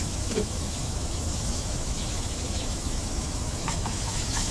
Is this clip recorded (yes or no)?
no